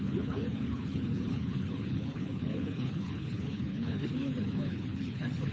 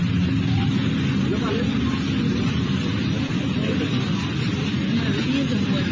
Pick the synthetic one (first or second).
first